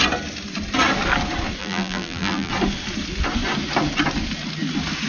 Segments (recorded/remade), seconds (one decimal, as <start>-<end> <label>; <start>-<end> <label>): 0.0-1.6 recorded; 1.6-2.5 remade; 2.5-5.1 recorded